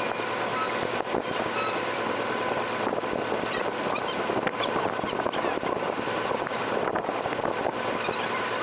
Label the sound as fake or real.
real